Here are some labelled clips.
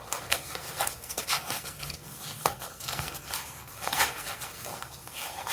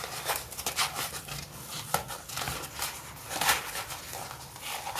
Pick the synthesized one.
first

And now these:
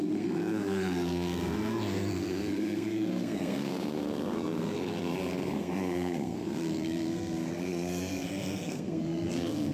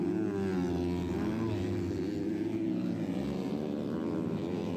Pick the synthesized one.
first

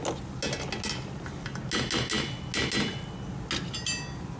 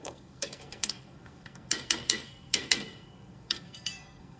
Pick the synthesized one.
second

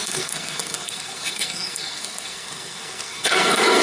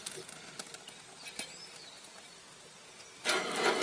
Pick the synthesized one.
first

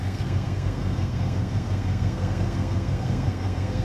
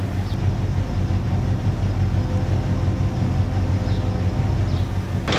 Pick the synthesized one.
first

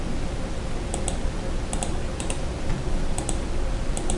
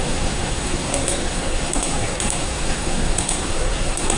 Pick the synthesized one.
second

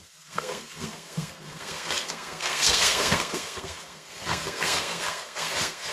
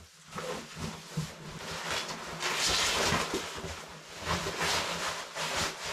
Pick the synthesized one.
first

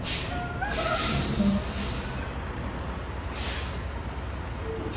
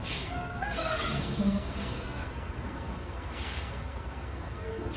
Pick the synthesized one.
second